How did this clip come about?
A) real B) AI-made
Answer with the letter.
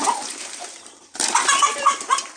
A